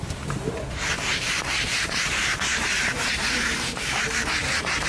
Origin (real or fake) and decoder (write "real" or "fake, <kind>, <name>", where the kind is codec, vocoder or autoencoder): fake, vocoder, BigVGAN v2